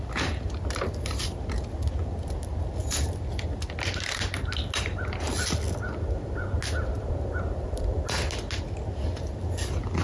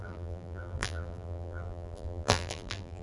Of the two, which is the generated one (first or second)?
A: second